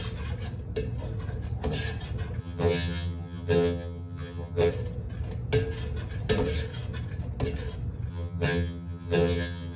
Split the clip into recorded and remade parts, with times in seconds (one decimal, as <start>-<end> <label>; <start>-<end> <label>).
0.0-2.4 recorded; 2.4-4.7 remade; 4.7-8.1 recorded; 8.1-9.8 remade